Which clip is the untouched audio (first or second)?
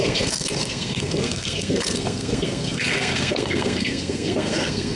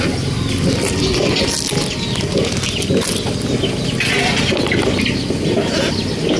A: second